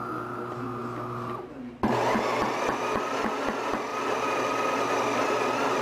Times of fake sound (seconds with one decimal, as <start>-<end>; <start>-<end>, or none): none